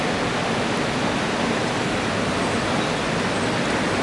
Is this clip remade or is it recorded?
recorded